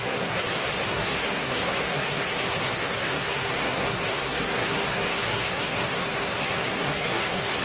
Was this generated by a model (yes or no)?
yes